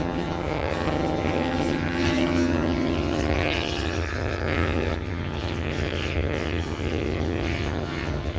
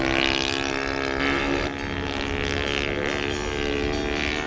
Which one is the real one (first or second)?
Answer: second